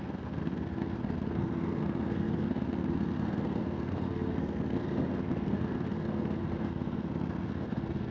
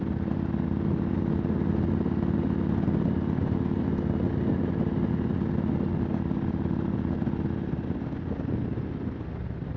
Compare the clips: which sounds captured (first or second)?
second